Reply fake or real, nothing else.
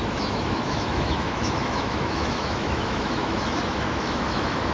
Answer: fake